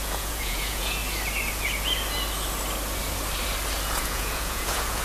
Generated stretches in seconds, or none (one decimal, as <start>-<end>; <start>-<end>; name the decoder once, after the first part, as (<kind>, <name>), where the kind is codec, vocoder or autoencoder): 0.0-1.0 (vocoder, Vocos); 4.0-5.0

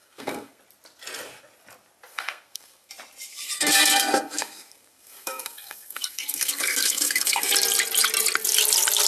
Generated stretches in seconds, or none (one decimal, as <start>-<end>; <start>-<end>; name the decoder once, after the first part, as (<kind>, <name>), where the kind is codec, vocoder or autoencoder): 0.0-0.6 (codec, SNAC); 2.1-2.9; 3.3-7.5

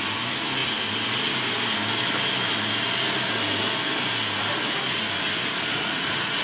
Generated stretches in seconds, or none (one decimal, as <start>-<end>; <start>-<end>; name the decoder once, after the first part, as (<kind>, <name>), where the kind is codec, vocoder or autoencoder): 5.7-6.4 (vocoder, Vocos)

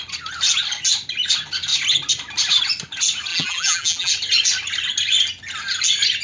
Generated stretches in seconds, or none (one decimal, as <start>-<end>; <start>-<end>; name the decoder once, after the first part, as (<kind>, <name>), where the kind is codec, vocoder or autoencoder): 3.3-4.1 (vocoder, BigVGAN v2)

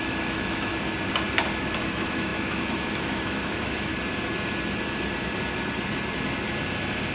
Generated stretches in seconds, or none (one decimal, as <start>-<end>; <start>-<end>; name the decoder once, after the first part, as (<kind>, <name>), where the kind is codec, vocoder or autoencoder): 0.0-0.7 (autoencoder, DAC-VAE); 1.6-3.9

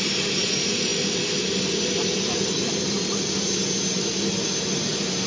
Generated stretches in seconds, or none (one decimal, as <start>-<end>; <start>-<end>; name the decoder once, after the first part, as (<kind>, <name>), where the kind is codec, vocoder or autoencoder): none